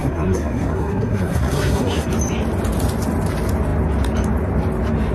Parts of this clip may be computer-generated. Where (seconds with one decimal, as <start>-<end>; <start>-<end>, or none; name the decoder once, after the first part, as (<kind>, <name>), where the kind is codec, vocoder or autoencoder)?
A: 0.0-2.1 (codec, SNAC)